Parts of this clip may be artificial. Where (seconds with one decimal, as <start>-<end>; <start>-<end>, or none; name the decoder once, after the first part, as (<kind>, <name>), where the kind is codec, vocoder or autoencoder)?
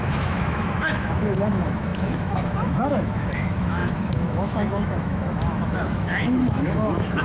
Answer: 0.0-7.2 (autoencoder, DAC-VAE)